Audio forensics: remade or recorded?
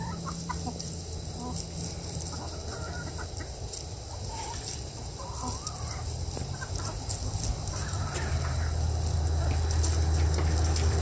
recorded